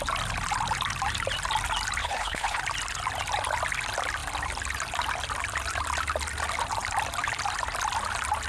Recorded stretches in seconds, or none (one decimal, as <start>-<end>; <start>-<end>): 0.0-2.0; 2.6-8.5